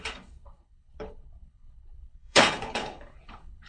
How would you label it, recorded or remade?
remade